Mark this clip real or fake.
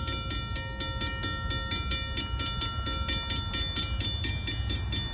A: real